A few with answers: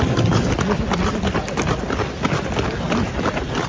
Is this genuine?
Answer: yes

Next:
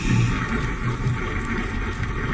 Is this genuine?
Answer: yes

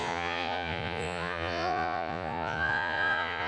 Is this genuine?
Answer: no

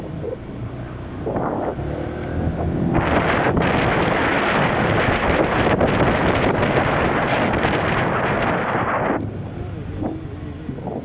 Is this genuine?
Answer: yes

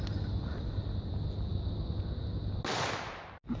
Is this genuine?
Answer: yes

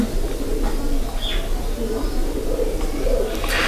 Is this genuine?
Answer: yes